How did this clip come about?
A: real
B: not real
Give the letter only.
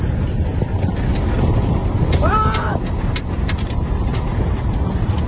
A